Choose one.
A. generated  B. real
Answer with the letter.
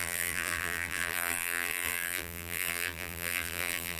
A